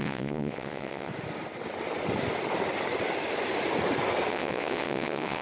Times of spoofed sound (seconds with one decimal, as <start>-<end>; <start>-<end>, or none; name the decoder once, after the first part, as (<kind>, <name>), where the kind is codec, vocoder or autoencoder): 0.0-1.1 (vocoder, WaveNeXt); 4.3-5.4